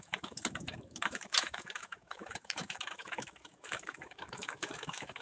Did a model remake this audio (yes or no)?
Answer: yes